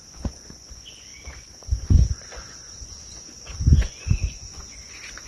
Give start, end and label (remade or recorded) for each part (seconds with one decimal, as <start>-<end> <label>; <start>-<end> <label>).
0.0-5.3 remade